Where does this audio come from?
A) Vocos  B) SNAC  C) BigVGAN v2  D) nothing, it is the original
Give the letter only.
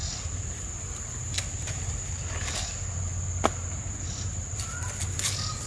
D